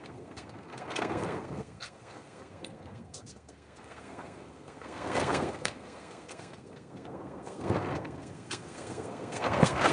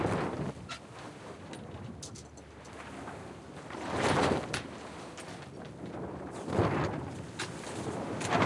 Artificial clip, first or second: first